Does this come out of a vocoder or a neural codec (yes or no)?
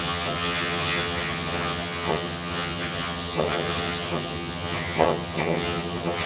yes